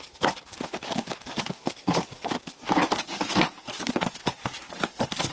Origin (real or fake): fake